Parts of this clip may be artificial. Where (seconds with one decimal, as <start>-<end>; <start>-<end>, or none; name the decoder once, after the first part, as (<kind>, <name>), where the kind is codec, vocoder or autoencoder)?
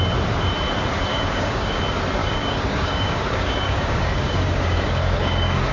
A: 1.1-1.8 (codec, DAC); 2.2-5.7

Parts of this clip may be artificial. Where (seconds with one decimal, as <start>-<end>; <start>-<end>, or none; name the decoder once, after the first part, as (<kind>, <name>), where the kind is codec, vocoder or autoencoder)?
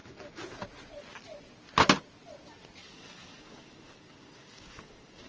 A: 2.8-5.3 (codec, DAC)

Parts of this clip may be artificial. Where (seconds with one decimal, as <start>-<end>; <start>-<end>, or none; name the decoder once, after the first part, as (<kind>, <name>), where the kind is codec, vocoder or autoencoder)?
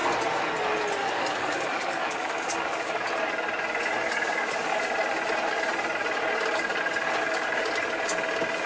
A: 1.0-3.1 (codec, DAC)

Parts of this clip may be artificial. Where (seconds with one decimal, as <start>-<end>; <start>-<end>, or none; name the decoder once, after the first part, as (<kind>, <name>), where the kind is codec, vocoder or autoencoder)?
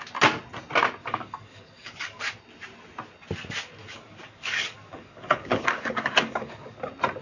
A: 1.0-2.3 (codec, DAC); 3.8-6.8